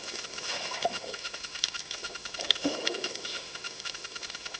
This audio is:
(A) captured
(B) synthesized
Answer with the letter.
B